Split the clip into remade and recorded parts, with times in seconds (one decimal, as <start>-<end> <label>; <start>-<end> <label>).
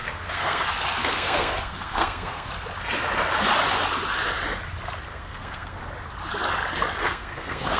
0.0-0.6 remade; 0.6-1.0 recorded; 1.0-2.5 remade; 2.5-5.1 recorded; 5.1-5.8 remade; 5.8-7.0 recorded; 7.0-7.8 remade